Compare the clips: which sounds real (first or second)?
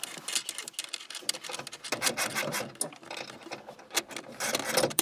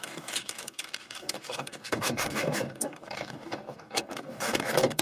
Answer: first